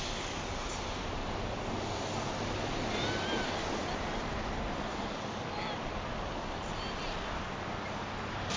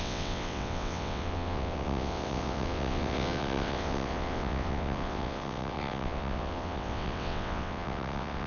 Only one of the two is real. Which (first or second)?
first